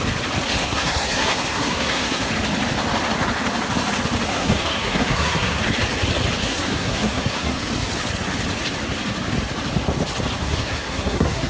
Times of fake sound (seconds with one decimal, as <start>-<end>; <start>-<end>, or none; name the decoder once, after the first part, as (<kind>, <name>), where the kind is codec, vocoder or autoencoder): 0.6-2.3 (codec, SNAC); 4.3-5.6; 6.4-7.7; 10.4-11.5